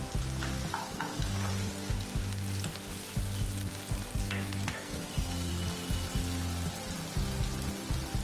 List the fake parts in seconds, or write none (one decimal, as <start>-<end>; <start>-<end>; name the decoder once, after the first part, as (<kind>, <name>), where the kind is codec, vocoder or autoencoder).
0.8-1.5 (codec, SNAC); 4.2-5.5